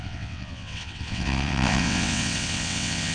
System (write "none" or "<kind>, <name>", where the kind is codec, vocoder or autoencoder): vocoder, WaveNeXt